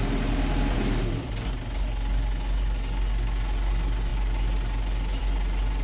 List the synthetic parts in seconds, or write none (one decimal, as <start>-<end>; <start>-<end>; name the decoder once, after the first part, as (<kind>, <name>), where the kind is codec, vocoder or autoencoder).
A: none